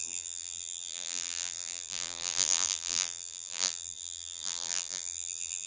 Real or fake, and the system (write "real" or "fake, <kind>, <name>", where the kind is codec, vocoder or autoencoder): fake, vocoder, BigVGAN v2